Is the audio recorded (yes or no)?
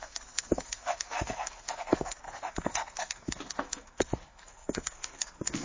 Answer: no